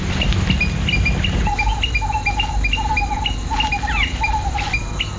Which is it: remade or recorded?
recorded